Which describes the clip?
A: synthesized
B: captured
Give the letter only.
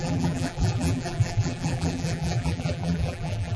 A